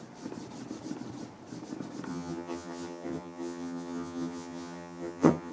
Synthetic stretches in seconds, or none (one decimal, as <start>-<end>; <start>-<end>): 2.1-5.5